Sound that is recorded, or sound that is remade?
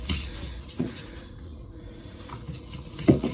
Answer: remade